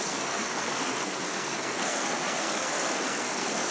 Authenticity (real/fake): fake